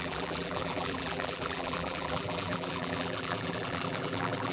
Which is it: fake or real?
fake